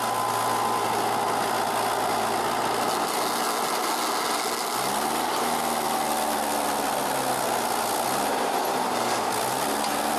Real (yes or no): yes